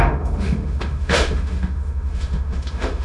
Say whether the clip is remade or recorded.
remade